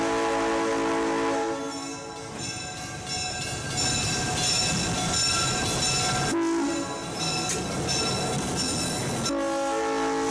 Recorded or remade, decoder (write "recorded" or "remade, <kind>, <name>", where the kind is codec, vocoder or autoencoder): recorded